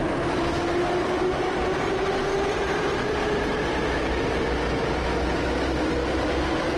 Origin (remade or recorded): recorded